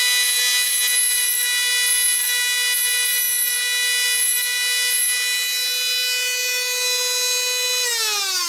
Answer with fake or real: real